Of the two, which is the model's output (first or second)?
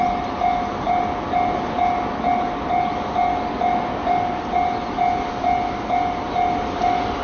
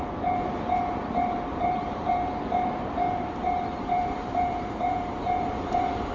second